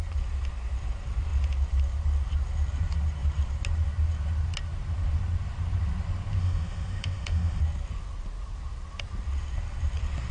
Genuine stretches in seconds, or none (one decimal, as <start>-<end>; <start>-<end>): 0.0-6.4; 7.6-10.3